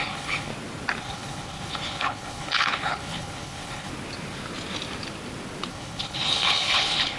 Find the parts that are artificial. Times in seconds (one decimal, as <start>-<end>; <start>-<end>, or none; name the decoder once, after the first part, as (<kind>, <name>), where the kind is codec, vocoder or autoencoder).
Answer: 0.0-0.5 (codec, HILCodec); 1.0-3.9; 5.7-7.2